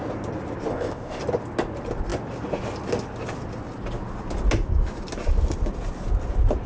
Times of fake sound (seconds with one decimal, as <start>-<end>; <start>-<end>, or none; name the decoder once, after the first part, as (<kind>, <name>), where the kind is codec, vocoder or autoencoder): 0.7-1.2 (codec, ZipCodec)